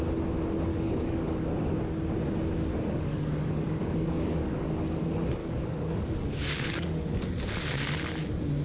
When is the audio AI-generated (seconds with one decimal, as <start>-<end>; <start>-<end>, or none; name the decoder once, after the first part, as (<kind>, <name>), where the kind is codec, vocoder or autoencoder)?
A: 0.7-1.4 (codec, DAC); 3.1-5.0; 5.4-7.3